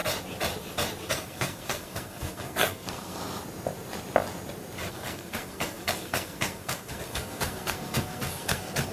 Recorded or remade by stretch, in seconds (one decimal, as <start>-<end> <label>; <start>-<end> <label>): 0.0-1.1 recorded; 1.1-3.2 remade; 3.2-4.9 recorded; 4.9-8.9 remade